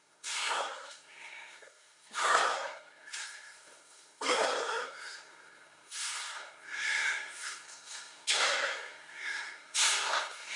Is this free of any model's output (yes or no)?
no